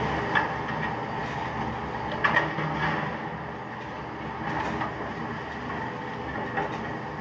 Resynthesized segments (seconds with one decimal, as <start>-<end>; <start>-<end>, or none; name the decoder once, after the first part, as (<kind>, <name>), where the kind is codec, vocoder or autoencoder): none